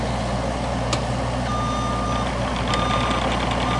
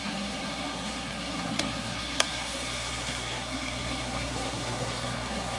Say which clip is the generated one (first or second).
second